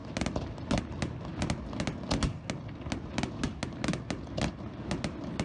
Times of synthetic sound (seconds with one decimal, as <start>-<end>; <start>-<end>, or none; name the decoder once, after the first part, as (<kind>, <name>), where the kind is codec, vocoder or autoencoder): none